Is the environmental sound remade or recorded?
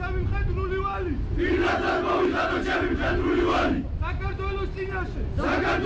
recorded